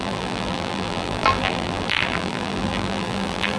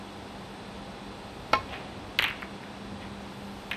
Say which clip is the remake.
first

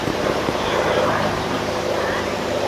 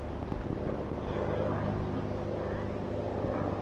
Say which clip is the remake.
first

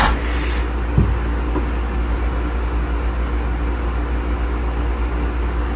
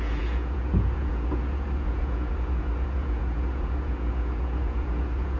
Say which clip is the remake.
second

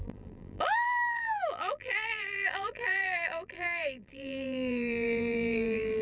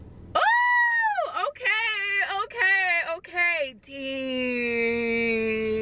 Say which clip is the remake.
first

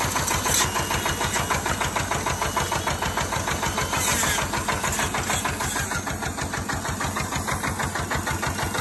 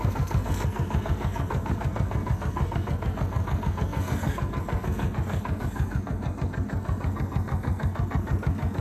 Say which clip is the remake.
second